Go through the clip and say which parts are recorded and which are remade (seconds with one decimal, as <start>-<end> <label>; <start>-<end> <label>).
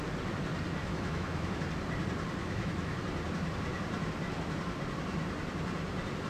0.0-0.8 recorded; 0.8-1.6 remade; 1.6-2.4 recorded; 2.4-3.0 remade; 3.0-6.3 recorded